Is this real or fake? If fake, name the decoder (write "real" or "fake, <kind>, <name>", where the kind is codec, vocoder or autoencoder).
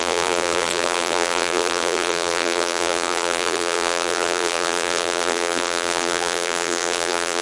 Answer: fake, vocoder, BigVGAN v2